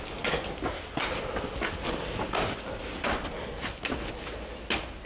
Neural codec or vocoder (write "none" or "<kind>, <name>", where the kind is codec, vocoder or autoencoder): none